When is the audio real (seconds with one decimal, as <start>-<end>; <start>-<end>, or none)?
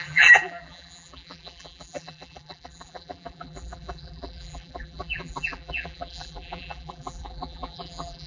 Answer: none